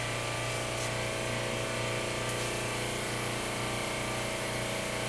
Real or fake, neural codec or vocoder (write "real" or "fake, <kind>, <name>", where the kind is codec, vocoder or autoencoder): real